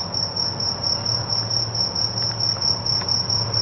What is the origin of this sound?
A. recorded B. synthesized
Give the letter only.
A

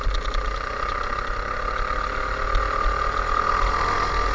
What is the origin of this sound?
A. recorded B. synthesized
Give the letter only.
A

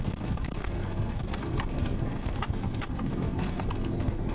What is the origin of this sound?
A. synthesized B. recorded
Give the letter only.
A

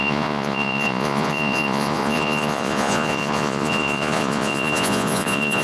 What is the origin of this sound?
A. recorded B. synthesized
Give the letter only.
B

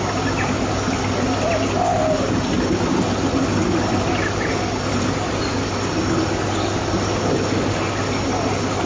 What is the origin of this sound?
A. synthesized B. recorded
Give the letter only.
B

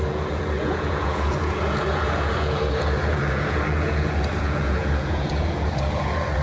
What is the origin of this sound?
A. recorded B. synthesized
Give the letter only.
B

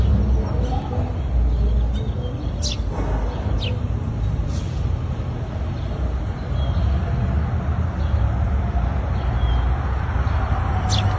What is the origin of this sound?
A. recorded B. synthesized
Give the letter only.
A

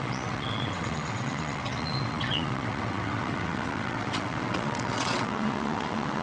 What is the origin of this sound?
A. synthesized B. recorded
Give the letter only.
A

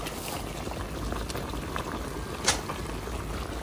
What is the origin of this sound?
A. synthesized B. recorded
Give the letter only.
B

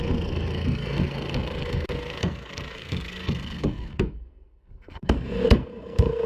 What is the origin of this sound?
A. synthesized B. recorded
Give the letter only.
A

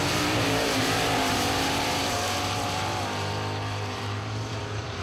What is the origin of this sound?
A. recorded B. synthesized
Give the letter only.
B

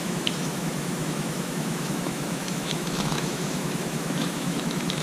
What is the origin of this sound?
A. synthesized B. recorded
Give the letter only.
A